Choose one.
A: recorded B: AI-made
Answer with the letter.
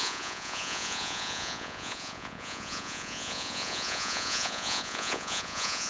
B